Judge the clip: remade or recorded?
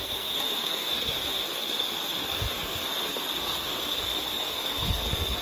remade